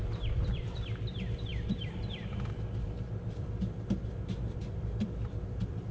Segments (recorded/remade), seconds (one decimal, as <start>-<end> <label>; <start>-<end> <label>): 0.0-5.9 remade